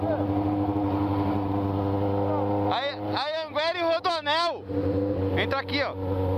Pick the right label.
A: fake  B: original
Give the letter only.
B